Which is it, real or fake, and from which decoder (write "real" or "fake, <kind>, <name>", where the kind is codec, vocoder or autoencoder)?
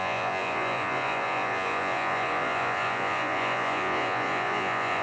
fake, vocoder, Vocos